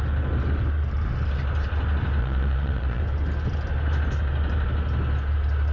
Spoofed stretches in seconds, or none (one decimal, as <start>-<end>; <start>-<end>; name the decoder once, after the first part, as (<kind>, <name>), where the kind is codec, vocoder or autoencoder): 2.2-3.0 (vocoder, Vocos)